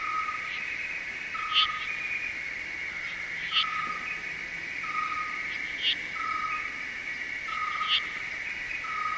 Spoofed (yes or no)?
no